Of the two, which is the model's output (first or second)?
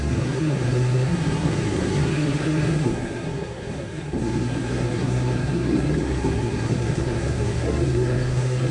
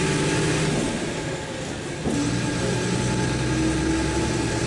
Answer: first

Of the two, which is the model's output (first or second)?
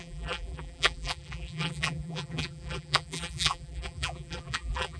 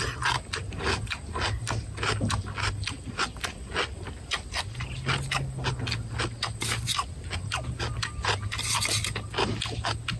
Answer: first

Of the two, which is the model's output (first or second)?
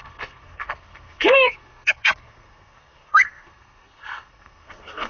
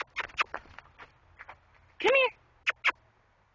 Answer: first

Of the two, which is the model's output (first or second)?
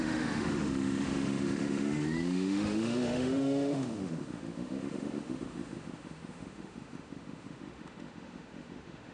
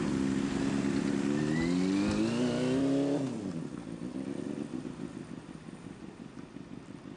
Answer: first